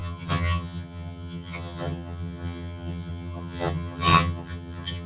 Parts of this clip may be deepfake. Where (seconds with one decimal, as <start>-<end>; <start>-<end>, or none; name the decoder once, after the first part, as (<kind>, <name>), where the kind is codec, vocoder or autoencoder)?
0.0-5.1 (vocoder, HiFi-GAN)